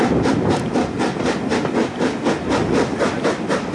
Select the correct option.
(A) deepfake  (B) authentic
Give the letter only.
B